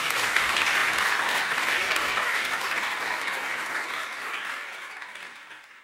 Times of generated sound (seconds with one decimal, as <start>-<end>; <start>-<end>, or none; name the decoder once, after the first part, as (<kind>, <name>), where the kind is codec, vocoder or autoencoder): 0.0-5.8 (codec, DAC)